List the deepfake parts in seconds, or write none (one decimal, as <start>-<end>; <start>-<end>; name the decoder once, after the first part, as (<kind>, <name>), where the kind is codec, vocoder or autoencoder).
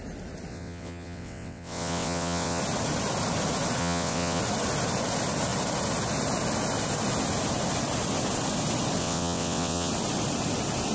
0.5-2.6 (vocoder, WaveNeXt); 3.8-4.4; 9.0-9.9